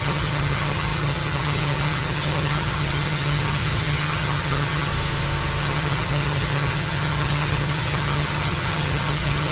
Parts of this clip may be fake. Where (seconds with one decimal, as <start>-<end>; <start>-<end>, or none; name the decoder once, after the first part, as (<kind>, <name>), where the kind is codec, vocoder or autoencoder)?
0.0-4.9 (vocoder, HiFi-GAN); 5.6-9.5